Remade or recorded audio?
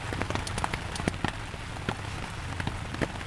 recorded